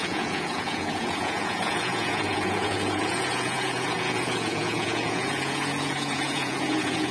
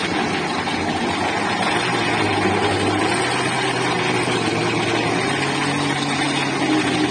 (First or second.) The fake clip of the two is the first